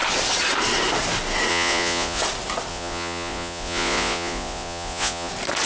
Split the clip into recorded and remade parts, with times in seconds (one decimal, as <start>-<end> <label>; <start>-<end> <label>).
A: 0.0-1.5 recorded; 1.5-2.2 remade; 2.2-2.7 recorded; 2.7-5.3 remade; 5.3-5.7 recorded